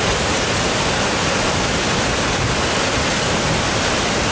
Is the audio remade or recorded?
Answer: recorded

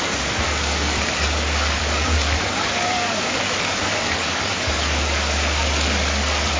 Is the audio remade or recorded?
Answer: remade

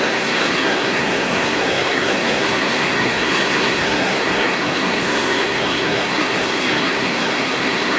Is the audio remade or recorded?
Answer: remade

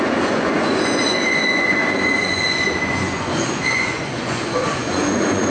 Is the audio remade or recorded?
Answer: remade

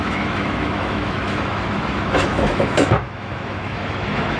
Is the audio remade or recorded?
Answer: remade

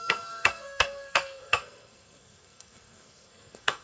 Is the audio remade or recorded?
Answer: remade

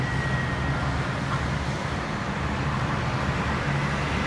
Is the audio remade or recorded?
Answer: recorded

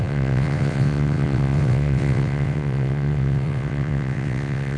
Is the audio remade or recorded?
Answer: remade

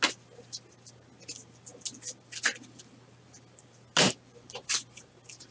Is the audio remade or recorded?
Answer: recorded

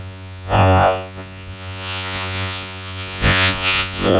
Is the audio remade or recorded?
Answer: remade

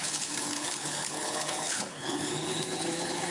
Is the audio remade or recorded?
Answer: remade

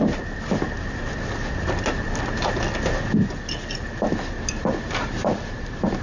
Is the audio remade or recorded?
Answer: recorded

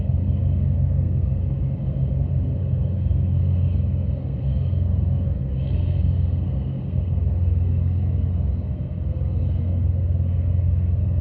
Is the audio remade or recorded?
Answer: remade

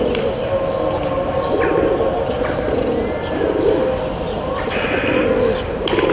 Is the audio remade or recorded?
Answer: recorded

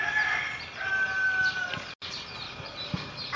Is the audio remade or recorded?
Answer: recorded